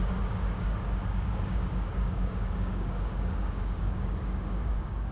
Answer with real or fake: fake